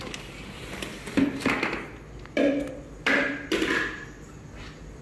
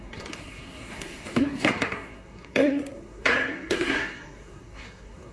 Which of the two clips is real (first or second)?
first